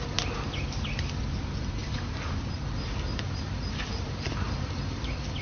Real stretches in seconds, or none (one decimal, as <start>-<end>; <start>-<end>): 0.0-1.8; 5.0-5.4